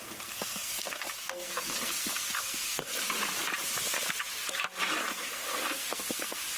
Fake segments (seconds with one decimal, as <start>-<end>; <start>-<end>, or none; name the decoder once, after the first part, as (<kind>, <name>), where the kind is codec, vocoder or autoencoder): 0.0-2.9 (codec, SNAC); 5.0-6.6